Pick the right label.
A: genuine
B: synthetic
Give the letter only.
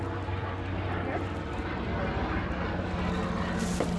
A